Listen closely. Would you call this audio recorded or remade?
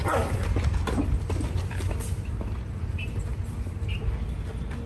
recorded